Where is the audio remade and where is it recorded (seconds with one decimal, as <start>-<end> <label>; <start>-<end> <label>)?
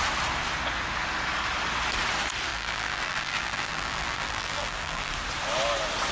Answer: 0.0-2.5 recorded; 2.5-5.1 remade; 5.1-6.1 recorded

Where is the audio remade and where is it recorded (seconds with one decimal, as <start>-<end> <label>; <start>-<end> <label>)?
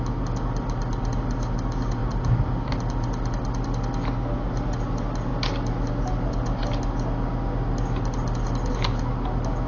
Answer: 0.0-2.0 recorded; 2.0-2.7 remade; 2.7-9.7 recorded